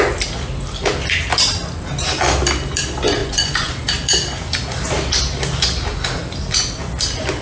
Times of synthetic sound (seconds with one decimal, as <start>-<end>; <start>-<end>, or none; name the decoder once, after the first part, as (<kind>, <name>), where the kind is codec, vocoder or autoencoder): 3.2-3.7 (vocoder, Vocos)